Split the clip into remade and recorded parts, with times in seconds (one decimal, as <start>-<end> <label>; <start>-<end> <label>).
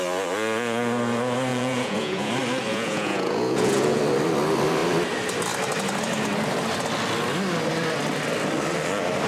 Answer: 0.0-1.5 recorded; 1.5-2.3 remade; 2.3-2.7 recorded; 2.7-4.0 remade; 4.0-9.3 recorded